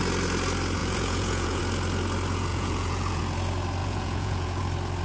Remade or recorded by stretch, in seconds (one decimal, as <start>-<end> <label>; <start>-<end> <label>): 0.0-0.8 recorded; 0.8-1.6 remade; 1.6-2.5 recorded; 2.5-3.2 remade; 3.2-3.8 recorded; 3.8-4.6 remade; 4.6-5.0 recorded